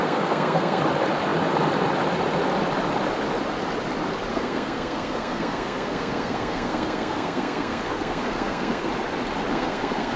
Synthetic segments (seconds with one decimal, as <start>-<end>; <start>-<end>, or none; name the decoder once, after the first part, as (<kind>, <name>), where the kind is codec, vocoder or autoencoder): 0.0-0.8 (codec, SNAC); 4.3-8.9; 9.5-10.2